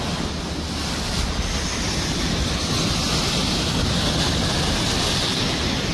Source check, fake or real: real